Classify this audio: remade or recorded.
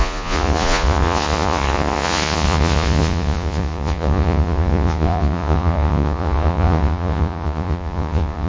remade